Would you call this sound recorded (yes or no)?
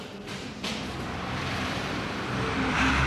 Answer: no